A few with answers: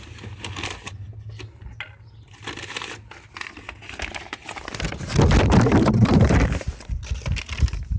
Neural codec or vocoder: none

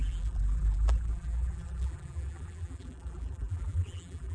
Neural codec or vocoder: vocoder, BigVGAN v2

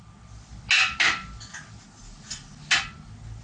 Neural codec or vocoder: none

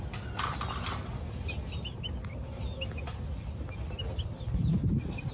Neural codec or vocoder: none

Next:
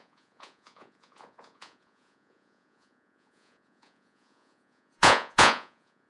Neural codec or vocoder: vocoder, Vocos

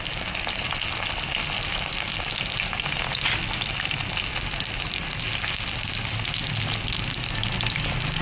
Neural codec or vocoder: none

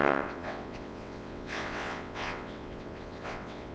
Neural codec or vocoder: vocoder, WaveNeXt